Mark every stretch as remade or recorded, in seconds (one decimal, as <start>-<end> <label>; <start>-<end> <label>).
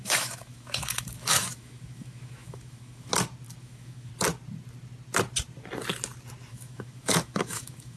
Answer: 0.0-3.1 remade; 3.1-3.6 recorded; 3.6-4.1 remade; 4.1-6.5 recorded; 6.5-8.0 remade